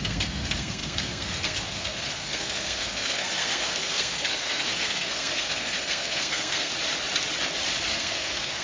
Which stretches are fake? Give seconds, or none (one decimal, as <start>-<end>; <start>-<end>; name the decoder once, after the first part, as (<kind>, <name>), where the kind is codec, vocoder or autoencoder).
0.0-6.7 (codec, SNAC); 7.9-8.6